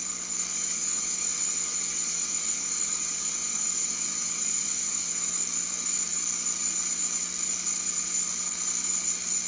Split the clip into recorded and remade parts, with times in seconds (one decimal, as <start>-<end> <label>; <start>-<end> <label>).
0.0-0.5 recorded; 0.5-5.3 remade; 5.3-9.5 recorded